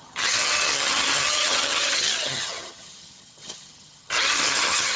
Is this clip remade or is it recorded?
remade